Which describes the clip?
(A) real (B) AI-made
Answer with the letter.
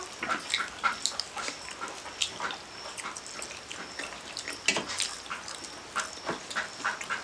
A